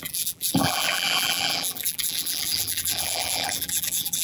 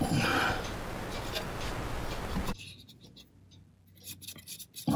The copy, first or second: first